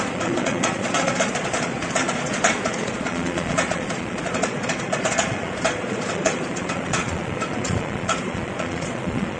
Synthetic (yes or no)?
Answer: yes